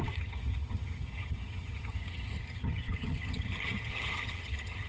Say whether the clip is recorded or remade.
remade